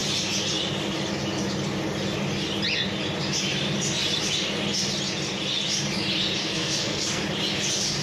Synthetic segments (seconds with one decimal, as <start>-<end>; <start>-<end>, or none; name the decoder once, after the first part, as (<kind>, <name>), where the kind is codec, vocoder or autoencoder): 6.4-7.2 (codec, SNAC)